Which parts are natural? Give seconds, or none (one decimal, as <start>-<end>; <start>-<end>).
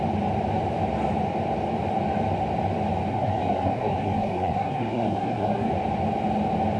0.0-3.1; 5.7-6.8